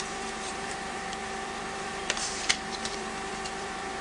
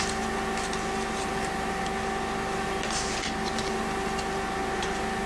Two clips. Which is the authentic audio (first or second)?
second